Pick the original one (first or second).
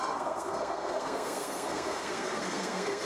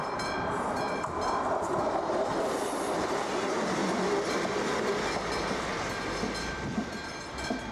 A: second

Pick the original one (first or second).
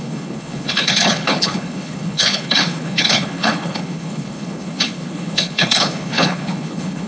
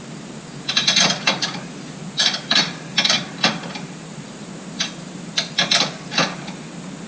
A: second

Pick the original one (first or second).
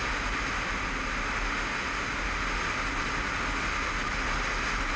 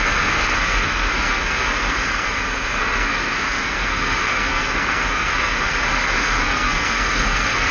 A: first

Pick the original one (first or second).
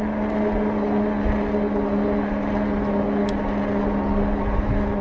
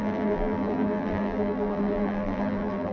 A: first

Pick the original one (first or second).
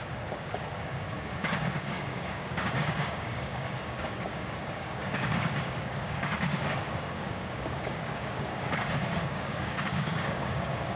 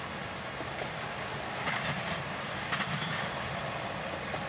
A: second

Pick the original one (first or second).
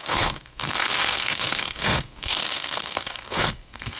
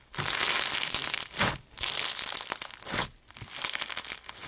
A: second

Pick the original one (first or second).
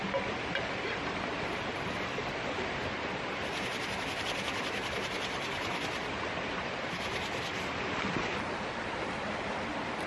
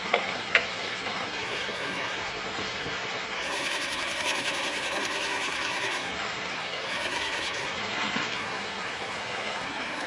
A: first